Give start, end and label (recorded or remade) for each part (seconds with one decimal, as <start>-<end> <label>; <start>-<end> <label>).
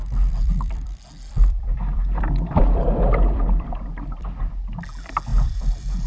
0.0-3.7 remade; 3.7-5.3 recorded; 5.3-6.1 remade